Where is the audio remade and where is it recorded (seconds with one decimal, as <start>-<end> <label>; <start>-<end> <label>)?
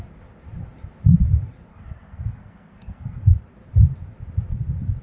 0.0-1.7 recorded; 1.7-3.2 remade; 3.2-5.0 recorded